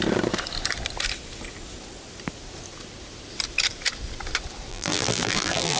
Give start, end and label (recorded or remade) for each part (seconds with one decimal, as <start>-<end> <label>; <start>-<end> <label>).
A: 0.0-4.7 recorded; 4.7-5.8 remade